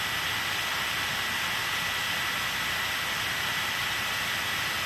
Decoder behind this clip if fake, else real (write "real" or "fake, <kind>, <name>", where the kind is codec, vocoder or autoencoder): real